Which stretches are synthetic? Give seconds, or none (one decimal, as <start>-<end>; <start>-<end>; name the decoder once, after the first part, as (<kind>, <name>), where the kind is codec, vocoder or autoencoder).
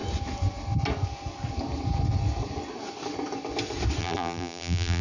4.0-5.0 (vocoder, BigVGAN v2)